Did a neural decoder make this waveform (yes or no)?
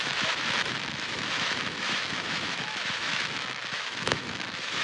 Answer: yes